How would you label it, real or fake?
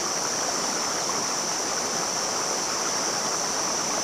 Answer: real